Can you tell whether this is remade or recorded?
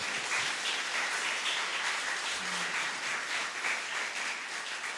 recorded